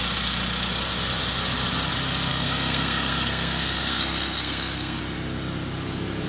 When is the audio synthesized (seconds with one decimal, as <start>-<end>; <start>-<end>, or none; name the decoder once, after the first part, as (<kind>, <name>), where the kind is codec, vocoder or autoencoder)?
2.3-5.0 (codec, SNAC)